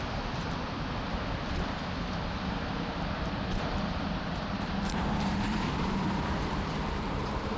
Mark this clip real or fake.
fake